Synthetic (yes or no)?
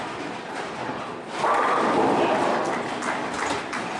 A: no